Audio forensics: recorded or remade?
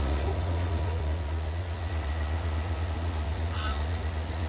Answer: remade